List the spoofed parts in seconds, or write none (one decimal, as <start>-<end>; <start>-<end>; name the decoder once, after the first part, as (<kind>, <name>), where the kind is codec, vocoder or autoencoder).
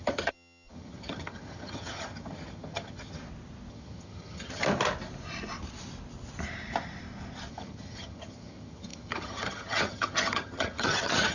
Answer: 0.0-3.2 (vocoder, HiFi-GAN); 3.7-4.6; 7.5-11.3